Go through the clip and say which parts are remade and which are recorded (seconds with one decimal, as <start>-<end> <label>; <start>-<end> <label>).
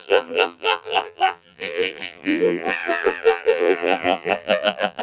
0.0-5.0 remade